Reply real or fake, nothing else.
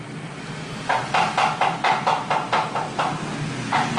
real